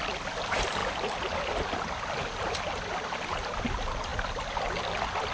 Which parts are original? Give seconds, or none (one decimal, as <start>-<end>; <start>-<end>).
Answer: 0.0-5.3